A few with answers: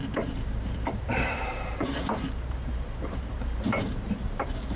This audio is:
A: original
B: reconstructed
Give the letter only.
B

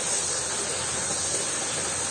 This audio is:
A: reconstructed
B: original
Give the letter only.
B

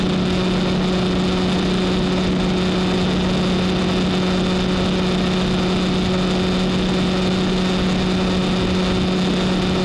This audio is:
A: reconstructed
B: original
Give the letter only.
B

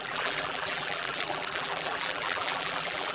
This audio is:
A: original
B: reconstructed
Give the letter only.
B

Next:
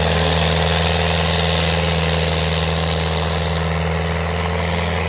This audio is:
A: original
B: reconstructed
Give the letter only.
A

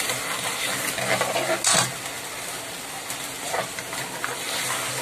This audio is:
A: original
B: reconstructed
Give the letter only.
A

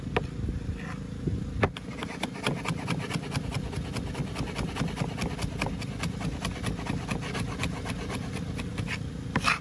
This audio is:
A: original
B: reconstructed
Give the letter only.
A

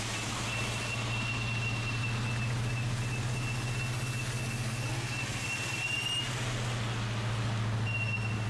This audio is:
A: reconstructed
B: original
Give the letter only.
B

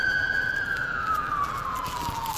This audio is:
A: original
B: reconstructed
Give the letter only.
B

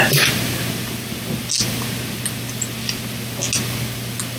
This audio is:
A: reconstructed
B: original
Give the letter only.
B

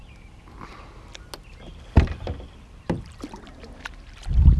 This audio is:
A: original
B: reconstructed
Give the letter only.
A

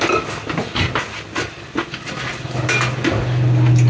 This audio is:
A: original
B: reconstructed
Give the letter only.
A